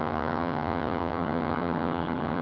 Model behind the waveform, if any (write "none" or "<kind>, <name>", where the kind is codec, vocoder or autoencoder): vocoder, HiFi-GAN